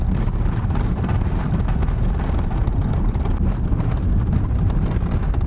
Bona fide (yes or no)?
yes